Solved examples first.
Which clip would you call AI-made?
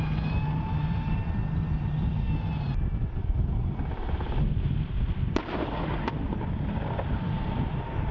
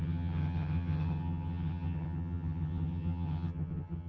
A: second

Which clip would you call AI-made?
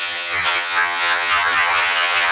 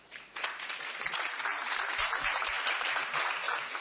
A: first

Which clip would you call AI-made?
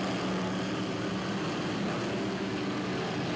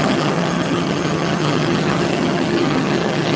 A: second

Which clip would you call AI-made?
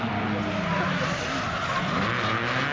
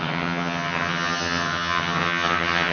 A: second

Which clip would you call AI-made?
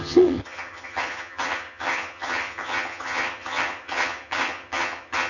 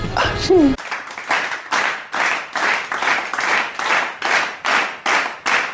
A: first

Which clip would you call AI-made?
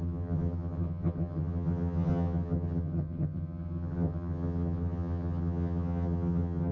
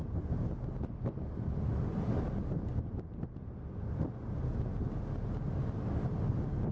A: first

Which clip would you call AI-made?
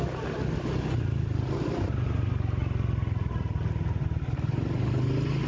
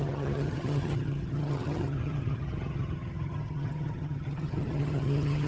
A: second